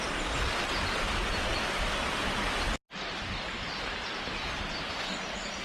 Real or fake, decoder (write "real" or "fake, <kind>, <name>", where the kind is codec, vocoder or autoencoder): real